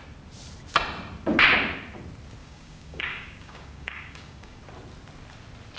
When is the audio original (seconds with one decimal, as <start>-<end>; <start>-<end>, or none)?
0.0-2.4; 4.6-5.8